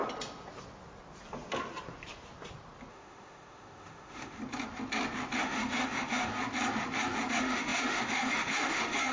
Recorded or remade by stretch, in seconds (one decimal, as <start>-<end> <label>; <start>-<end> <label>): 0.0-2.9 recorded; 2.9-4.4 remade; 4.4-5.4 recorded; 5.4-6.3 remade; 6.3-7.3 recorded; 7.3-9.1 remade

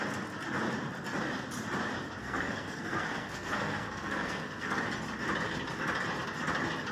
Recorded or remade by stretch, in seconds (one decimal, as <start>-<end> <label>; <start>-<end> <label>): 0.0-2.2 recorded; 2.2-4.8 remade; 4.8-6.9 recorded

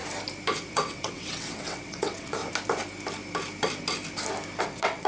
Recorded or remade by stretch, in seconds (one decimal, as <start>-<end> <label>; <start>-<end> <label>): 0.0-0.7 recorded; 0.7-2.4 remade; 2.4-4.6 recorded; 4.6-5.1 remade

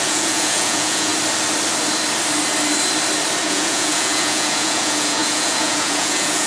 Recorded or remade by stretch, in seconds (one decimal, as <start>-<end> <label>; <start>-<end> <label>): 0.0-1.1 remade; 1.1-3.4 recorded; 3.4-6.5 remade

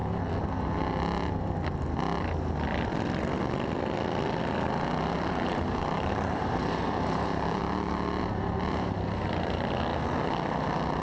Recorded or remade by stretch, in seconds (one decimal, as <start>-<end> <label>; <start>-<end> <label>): 0.0-5.3 recorded; 5.3-7.6 remade; 7.6-8.2 recorded; 8.2-9.9 remade; 9.9-10.5 recorded; 10.5-11.0 remade

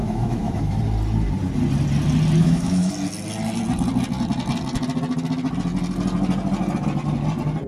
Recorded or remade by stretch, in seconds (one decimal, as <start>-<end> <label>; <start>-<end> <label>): 0.0-0.8 remade; 0.8-2.4 recorded; 2.4-2.9 remade; 2.9-7.7 recorded

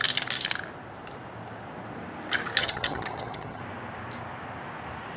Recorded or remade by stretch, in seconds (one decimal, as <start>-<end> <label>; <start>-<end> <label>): 0.0-2.6 recorded; 2.6-3.6 remade; 3.6-5.2 recorded

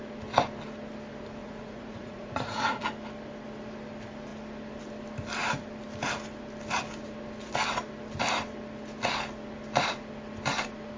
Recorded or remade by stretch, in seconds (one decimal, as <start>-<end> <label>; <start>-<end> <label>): 0.0-1.4 recorded; 1.4-2.8 remade; 2.8-11.0 recorded